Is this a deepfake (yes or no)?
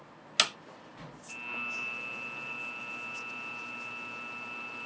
no